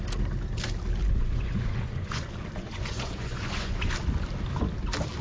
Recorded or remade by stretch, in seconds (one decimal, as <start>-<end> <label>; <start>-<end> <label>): 0.0-1.0 recorded; 1.0-2.2 remade; 2.2-2.6 recorded; 2.6-3.9 remade; 3.9-5.2 recorded